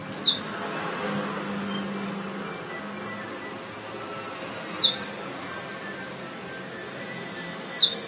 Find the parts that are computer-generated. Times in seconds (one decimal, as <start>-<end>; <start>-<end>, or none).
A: none